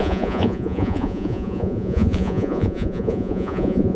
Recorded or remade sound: remade